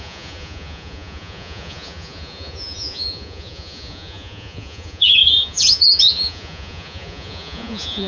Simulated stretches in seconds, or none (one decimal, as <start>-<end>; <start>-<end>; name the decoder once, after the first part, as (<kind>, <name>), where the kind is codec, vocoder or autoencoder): 0.0-8.1 (vocoder, Vocos)